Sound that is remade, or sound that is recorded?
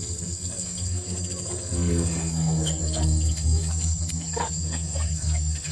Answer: remade